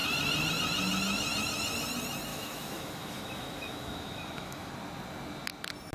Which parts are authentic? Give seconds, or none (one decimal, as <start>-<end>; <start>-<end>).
0.0-2.3; 4.7-5.9